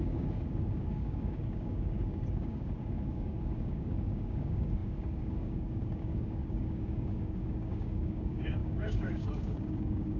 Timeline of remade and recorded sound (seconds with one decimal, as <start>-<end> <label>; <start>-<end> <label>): 0.0-10.2 remade